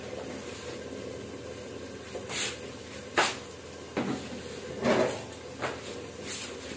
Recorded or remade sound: recorded